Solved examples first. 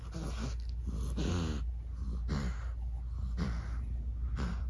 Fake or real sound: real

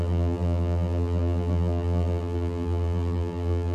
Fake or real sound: fake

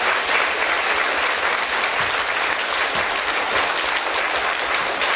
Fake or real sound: real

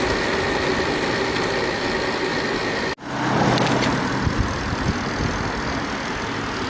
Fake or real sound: real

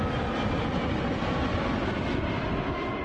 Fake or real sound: real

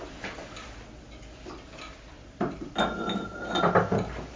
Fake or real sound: real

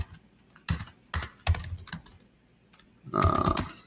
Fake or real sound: real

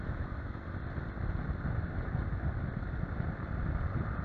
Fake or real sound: real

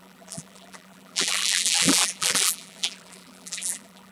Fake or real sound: fake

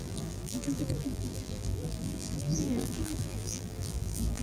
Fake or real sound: fake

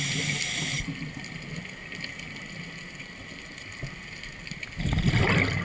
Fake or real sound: real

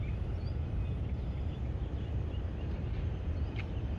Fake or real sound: fake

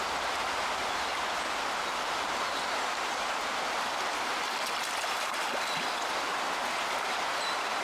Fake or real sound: real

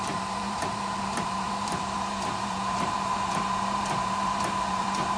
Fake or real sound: fake